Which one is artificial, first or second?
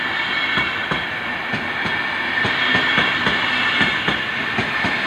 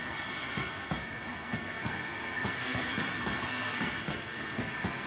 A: second